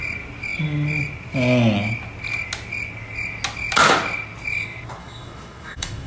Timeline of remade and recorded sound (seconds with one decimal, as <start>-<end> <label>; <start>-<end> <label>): 0.0-5.0 recorded; 5.0-6.1 remade